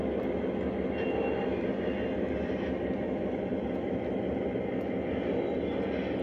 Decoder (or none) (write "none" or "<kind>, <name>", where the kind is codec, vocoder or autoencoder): none